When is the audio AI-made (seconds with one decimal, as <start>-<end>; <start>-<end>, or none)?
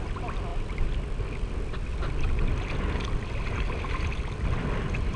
none